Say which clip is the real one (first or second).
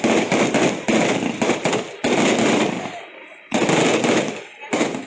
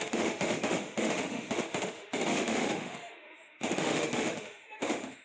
first